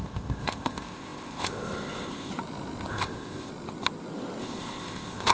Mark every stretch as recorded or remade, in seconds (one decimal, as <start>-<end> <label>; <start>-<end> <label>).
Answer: 0.0-2.3 remade; 2.3-2.9 recorded; 2.9-3.5 remade; 3.5-4.4 recorded; 4.4-5.3 remade